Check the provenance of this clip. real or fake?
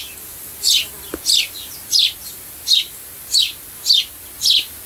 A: real